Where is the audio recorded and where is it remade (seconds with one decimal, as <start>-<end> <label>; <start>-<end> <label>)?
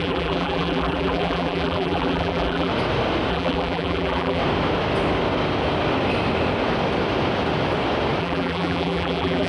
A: 0.0-2.7 remade; 2.7-3.3 recorded; 3.3-4.4 remade; 4.4-8.2 recorded; 8.2-9.5 remade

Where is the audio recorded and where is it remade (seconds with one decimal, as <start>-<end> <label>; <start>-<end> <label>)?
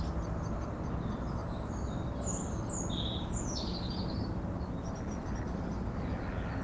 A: 0.0-6.6 recorded